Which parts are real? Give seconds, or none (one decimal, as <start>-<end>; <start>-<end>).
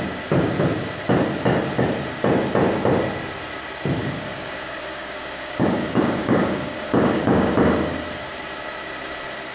0.0-4.0; 7.5-9.5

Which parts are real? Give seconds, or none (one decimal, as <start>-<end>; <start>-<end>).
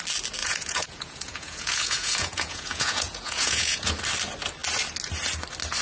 0.0-0.4; 3.9-5.8